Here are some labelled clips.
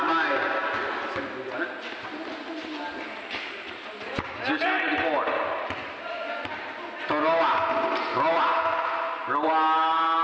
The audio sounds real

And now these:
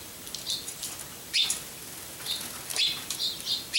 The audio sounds real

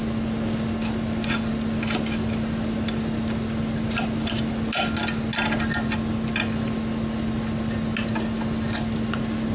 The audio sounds real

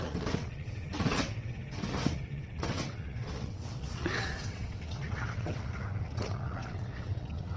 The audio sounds fake